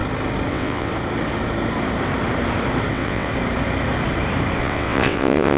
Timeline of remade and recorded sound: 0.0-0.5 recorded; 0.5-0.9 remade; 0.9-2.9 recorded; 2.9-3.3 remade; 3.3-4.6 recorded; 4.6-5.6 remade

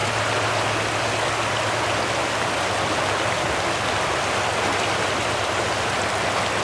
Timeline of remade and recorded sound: 0.0-6.6 recorded

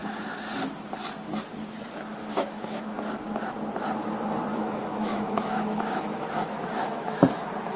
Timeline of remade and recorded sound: 0.0-2.2 recorded; 2.2-2.8 remade; 2.8-4.5 recorded; 4.5-7.2 remade; 7.2-7.8 recorded

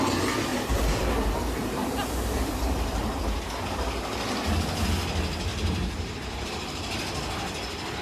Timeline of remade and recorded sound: 0.0-0.5 recorded; 0.5-3.4 remade; 3.4-5.5 recorded; 5.5-6.5 remade; 6.5-8.0 recorded

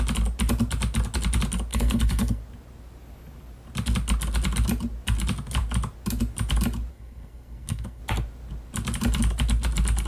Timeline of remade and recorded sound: 0.0-1.7 recorded; 1.7-2.4 remade; 2.4-6.9 recorded; 6.9-8.0 remade; 8.0-10.1 recorded

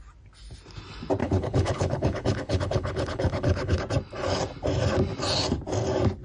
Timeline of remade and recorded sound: 0.0-1.2 recorded; 1.2-3.8 remade; 3.8-6.2 recorded

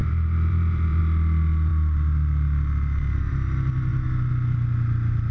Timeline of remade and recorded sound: 0.0-1.0 remade; 1.0-5.3 recorded

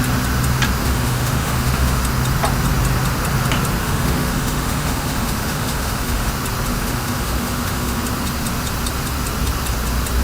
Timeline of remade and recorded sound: 0.0-0.8 recorded; 0.8-2.0 remade; 2.0-3.8 recorded; 3.8-6.3 remade; 6.3-6.7 recorded; 6.7-8.0 remade; 8.0-10.2 recorded